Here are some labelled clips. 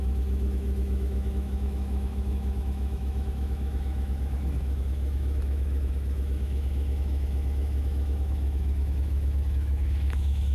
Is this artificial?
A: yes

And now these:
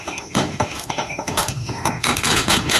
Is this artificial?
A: yes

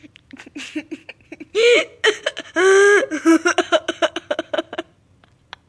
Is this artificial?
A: no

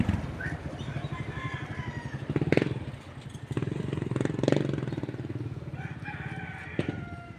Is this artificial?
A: no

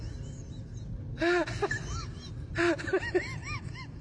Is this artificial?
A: no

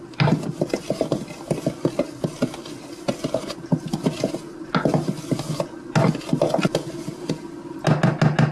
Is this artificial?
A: no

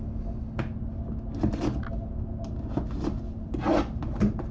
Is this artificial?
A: no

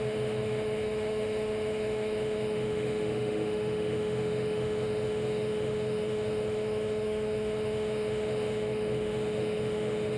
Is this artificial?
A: yes